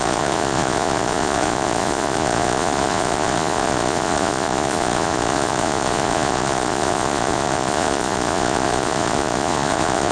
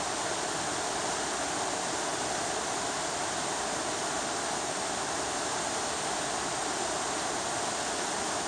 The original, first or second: second